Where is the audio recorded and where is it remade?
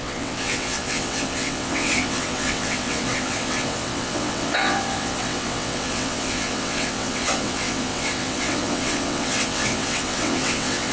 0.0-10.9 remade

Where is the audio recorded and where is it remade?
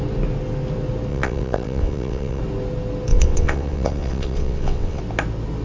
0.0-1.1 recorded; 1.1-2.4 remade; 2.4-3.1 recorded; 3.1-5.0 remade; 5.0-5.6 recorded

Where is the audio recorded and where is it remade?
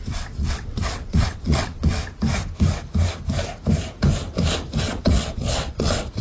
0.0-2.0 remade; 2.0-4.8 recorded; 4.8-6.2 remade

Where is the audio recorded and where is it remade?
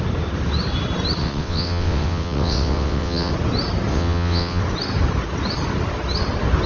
0.0-1.2 recorded; 1.2-3.3 remade; 3.3-3.9 recorded; 3.9-4.6 remade; 4.6-6.7 recorded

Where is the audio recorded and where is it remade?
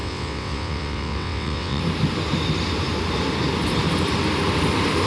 0.0-1.8 remade; 1.8-5.1 recorded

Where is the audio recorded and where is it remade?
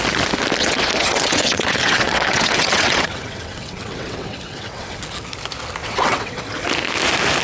0.0-0.6 recorded; 0.6-5.0 remade; 5.0-5.8 recorded; 5.8-6.4 remade; 6.4-7.4 recorded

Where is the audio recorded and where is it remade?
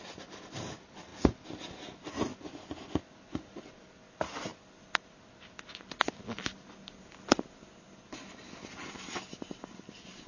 0.0-10.3 recorded